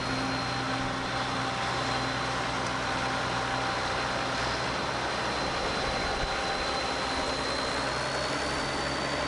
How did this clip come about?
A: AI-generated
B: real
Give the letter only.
B